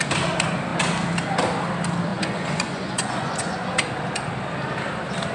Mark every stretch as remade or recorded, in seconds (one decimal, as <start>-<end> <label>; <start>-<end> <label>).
0.0-2.1 recorded; 2.1-3.8 remade; 3.8-5.3 recorded